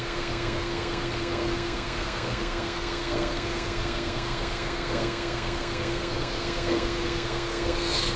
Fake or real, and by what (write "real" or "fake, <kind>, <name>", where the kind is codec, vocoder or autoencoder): fake, codec, SNAC